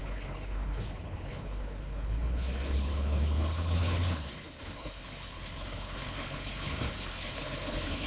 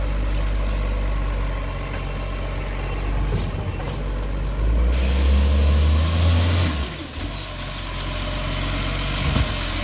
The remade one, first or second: first